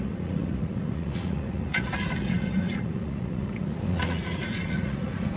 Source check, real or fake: fake